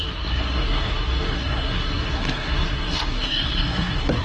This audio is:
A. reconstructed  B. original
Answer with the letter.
A